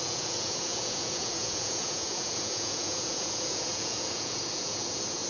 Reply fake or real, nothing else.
fake